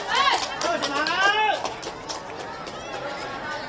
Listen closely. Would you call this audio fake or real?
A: real